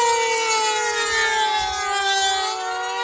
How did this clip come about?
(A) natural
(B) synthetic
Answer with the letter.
A